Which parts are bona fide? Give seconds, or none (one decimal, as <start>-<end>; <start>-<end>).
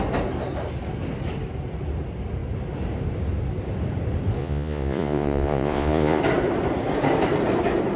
0.0-4.4; 6.2-8.0